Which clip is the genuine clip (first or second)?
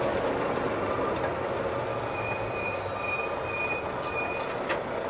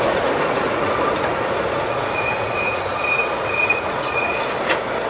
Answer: first